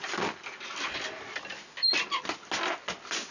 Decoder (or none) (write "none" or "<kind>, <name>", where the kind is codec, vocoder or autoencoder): none